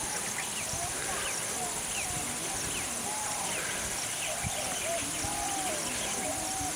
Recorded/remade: recorded